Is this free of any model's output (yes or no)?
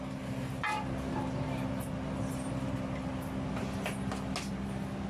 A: yes